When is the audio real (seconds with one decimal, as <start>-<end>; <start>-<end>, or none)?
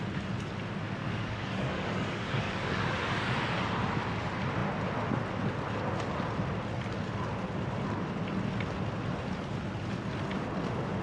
0.0-1.0; 3.3-11.0